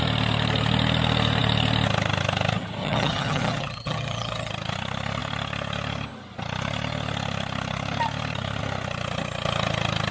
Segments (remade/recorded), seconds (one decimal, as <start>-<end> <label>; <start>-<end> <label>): 0.0-2.8 recorded; 2.8-4.5 remade; 4.5-10.1 recorded